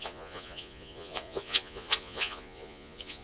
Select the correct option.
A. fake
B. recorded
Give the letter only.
A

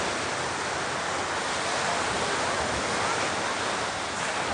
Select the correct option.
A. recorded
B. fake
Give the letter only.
A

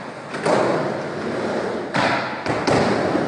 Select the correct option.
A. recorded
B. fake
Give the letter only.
A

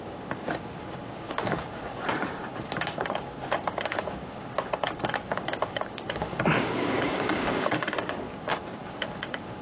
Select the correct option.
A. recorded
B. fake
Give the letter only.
B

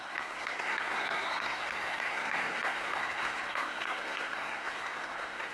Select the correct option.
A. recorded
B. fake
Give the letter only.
B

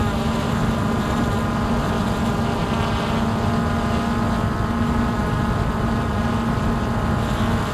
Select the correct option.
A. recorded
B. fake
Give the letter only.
A